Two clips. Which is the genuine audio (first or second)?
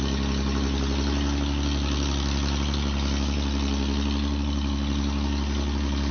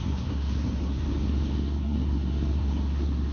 first